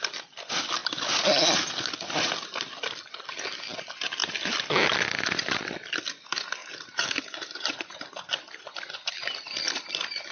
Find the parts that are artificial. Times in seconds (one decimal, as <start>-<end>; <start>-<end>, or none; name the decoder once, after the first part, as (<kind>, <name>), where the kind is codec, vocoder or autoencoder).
6.6-8.3 (vocoder, BigVGAN v2)